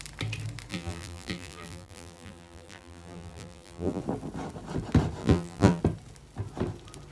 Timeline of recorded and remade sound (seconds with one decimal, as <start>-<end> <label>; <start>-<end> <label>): 0.0-0.7 recorded; 0.7-4.0 remade; 4.0-5.2 recorded; 5.2-5.8 remade; 5.8-7.1 recorded